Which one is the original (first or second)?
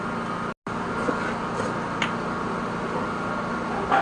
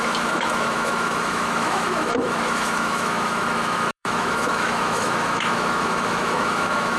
first